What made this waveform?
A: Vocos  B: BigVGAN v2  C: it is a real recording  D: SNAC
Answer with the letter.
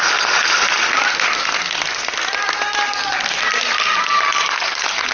C